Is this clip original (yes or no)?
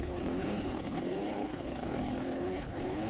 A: no